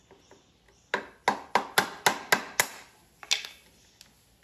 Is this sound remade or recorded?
recorded